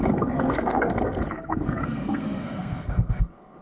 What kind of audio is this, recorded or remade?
remade